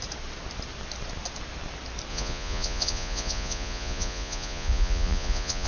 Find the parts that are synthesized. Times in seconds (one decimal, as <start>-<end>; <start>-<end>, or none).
2.1-5.7